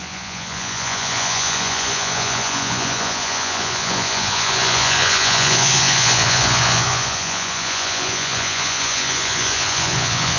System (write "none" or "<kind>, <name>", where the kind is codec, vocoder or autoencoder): vocoder, Vocos